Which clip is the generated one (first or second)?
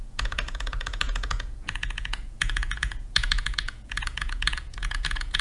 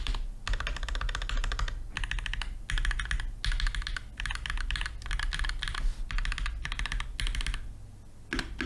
first